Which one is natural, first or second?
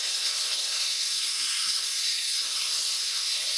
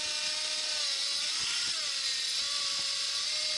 second